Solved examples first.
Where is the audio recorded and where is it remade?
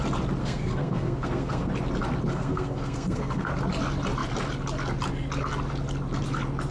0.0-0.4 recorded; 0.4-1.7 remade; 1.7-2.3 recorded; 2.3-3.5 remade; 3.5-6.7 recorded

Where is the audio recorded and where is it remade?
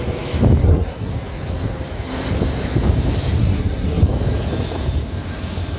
0.0-0.6 recorded; 0.6-1.1 remade; 1.1-3.4 recorded; 3.4-4.0 remade; 4.0-5.8 recorded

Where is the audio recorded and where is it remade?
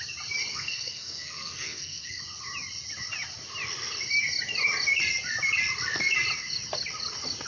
0.0-0.5 recorded; 0.5-2.2 remade; 2.2-7.5 recorded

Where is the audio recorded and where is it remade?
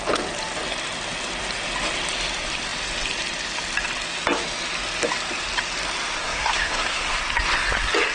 0.0-6.2 recorded; 6.2-7.2 remade; 7.2-8.1 recorded